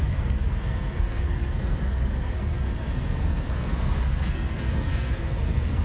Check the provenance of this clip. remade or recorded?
remade